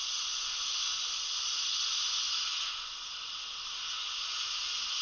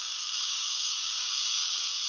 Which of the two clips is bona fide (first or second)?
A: first